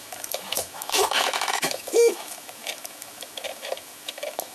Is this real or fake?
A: fake